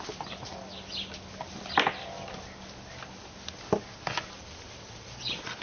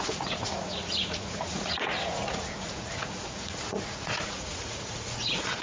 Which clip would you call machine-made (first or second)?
second